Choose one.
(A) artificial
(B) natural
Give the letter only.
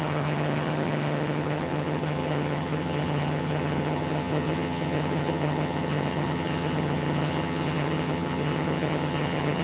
A